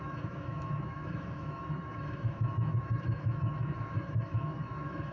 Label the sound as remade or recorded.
remade